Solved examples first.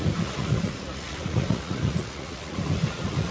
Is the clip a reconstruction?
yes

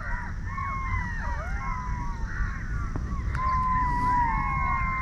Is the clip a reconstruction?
no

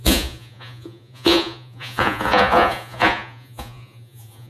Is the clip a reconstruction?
yes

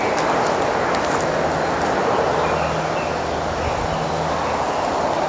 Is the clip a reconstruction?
no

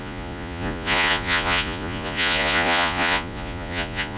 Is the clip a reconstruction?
yes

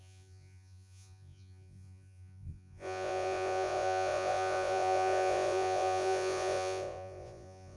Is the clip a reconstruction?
yes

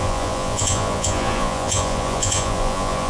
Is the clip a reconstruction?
yes